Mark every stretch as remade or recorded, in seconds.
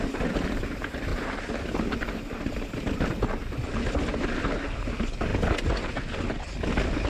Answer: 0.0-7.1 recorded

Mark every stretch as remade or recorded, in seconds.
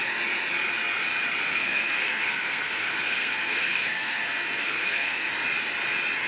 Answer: 0.0-1.5 recorded; 1.5-5.3 remade; 5.3-6.3 recorded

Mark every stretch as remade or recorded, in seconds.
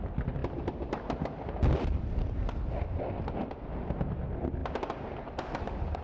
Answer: 0.0-6.0 recorded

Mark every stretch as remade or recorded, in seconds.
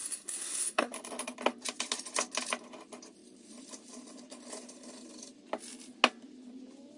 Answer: 0.0-0.9 remade; 0.9-7.0 recorded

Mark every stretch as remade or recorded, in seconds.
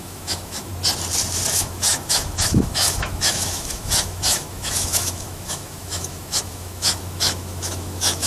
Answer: 0.0-0.7 remade; 0.7-1.5 recorded; 1.5-8.3 remade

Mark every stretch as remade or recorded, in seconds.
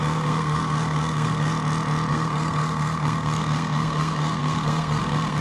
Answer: 0.0-1.5 remade; 1.5-2.1 recorded; 2.1-5.4 remade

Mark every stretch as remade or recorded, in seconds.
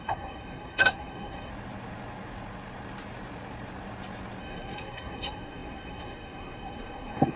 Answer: 0.0-1.5 remade; 1.5-4.4 recorded; 4.4-7.4 remade